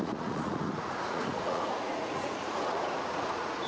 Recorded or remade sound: remade